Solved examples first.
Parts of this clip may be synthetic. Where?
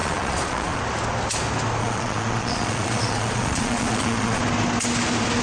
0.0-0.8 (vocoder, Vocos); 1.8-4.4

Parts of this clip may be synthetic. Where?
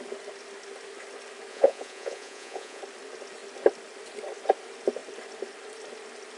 1.5-2.8 (vocoder, Vocos)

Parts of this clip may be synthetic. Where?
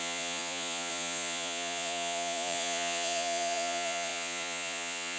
0.0-5.2 (vocoder, Vocos)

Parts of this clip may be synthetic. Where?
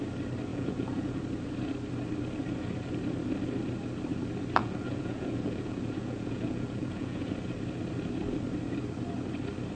0.5-1.2 (vocoder, Vocos); 4.6-7.3